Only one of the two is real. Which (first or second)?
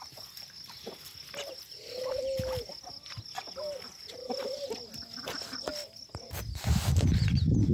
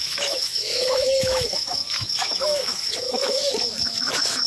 first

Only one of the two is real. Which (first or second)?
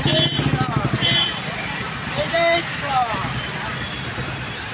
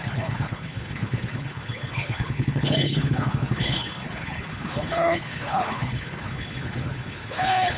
first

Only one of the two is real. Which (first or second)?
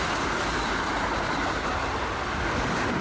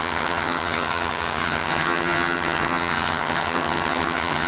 first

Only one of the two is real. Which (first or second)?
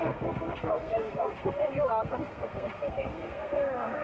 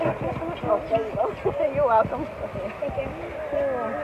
second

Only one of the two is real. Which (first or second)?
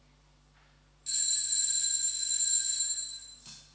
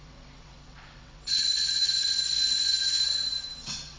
first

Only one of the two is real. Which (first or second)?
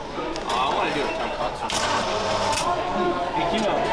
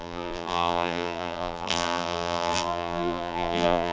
first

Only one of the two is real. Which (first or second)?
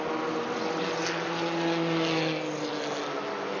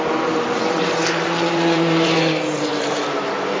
first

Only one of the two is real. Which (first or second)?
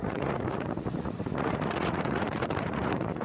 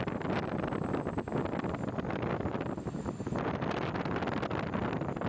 second